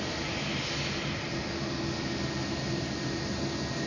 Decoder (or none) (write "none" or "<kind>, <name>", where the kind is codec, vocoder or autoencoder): none